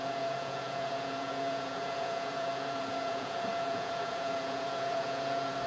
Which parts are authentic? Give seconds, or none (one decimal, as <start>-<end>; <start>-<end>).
none